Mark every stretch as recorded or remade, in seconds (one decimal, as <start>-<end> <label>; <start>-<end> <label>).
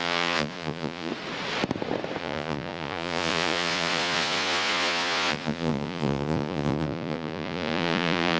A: 0.0-1.1 remade; 1.1-2.2 recorded; 2.2-8.4 remade